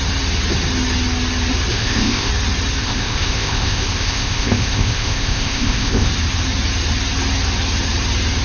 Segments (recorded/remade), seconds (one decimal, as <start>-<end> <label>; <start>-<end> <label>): 0.0-1.7 recorded; 1.7-2.3 remade; 2.3-2.8 recorded; 2.8-6.1 remade; 6.1-8.4 recorded

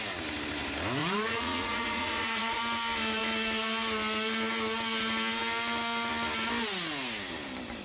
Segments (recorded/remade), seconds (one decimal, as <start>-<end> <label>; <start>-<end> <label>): 0.0-1.0 recorded; 1.0-2.6 remade; 2.6-7.8 recorded

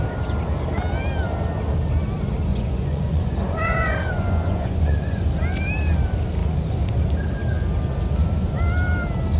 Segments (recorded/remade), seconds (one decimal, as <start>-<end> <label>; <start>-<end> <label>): 0.0-2.5 recorded; 2.5-5.3 remade; 5.3-9.4 recorded

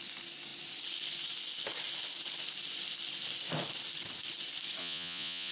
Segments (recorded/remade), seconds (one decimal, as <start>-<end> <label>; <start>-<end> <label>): 0.0-4.8 recorded; 4.8-5.5 remade

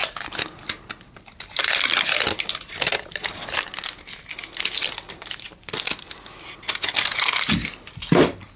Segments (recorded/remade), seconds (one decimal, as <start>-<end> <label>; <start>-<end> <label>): 0.0-8.6 recorded

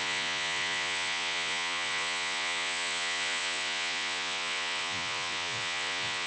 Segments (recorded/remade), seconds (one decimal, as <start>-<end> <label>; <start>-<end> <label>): 0.0-6.3 remade